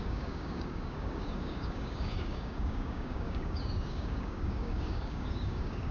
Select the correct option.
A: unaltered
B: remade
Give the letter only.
B